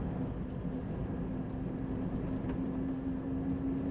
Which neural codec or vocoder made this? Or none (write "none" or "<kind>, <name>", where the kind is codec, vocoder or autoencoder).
none